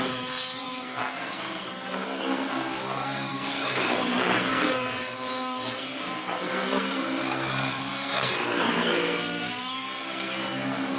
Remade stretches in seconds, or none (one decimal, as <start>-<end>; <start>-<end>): 0.0-11.0